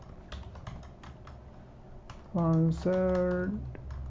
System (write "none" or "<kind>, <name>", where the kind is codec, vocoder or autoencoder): none